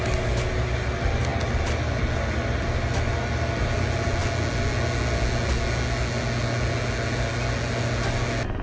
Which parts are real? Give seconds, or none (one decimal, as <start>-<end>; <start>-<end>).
0.0-8.6

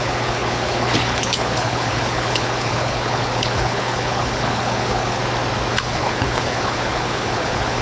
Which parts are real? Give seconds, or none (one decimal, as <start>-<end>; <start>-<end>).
5.2-5.7

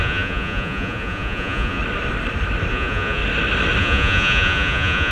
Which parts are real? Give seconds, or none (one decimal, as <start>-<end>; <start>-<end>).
1.8-2.7; 3.2-3.8

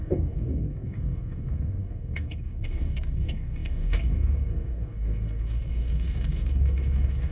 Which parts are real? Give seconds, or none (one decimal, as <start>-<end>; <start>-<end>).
none

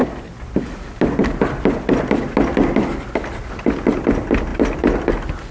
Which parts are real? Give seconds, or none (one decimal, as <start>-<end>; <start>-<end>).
0.0-4.5; 5.1-5.5

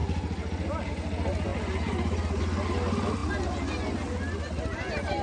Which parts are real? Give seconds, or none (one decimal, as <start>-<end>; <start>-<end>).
0.0-5.2